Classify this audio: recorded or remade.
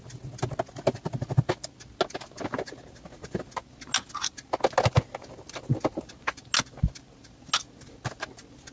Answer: recorded